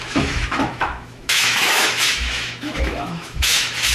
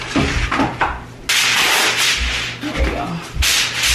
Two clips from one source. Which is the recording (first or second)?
second